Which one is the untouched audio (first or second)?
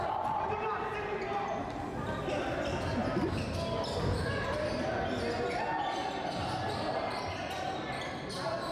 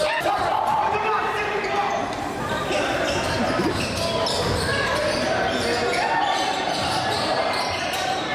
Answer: first